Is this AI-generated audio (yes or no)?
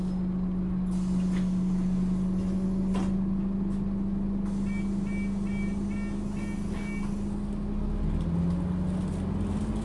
no